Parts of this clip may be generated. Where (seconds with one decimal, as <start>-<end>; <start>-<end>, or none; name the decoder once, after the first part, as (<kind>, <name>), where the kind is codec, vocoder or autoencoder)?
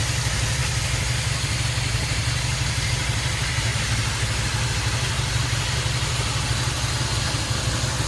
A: none